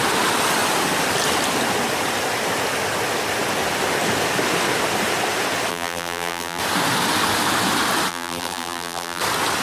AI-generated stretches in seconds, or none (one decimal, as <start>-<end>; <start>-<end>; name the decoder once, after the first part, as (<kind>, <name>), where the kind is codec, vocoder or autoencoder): 5.7-6.6 (vocoder, BigVGAN v2); 8.1-9.2